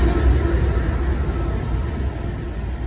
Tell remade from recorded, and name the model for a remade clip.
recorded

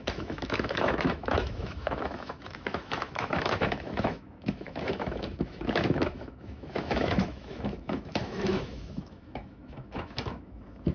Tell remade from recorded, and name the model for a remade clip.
remade, autoencoder, DAC-VAE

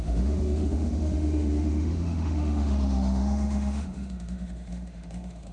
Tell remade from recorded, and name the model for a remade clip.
remade, autoencoder, DAC-VAE